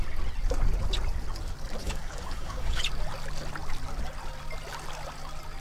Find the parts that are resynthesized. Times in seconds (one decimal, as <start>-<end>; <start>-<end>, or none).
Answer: 1.8-2.8